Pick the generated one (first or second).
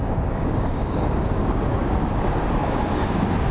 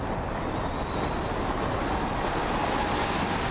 first